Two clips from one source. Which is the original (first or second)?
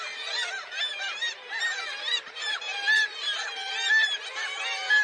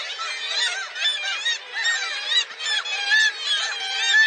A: second